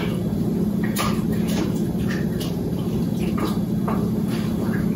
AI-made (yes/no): yes